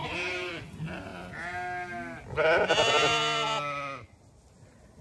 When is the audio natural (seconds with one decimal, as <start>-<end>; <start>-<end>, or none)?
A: 0.5-5.0